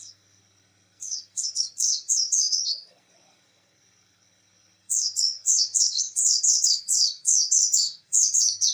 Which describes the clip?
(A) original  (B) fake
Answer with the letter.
B